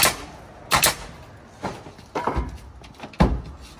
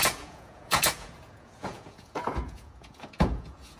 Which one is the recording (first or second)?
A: first